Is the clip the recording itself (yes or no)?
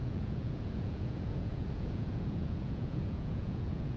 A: no